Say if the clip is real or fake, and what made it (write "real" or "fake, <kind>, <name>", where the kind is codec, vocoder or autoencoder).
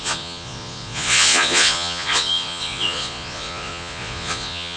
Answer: fake, vocoder, Vocos